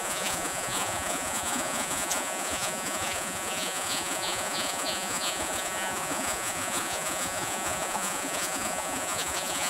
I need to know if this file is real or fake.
fake